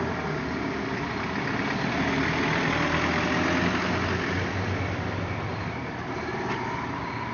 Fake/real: real